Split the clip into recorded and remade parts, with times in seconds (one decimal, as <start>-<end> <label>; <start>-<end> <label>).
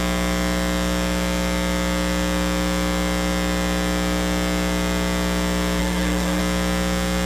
0.0-5.8 recorded; 5.8-6.4 remade; 6.4-7.3 recorded